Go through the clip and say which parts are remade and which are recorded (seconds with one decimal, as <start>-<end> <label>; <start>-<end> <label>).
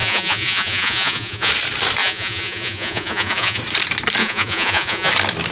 0.0-1.5 remade; 1.5-2.0 recorded; 2.0-3.6 remade; 3.6-4.2 recorded; 4.2-5.1 remade; 5.1-5.5 recorded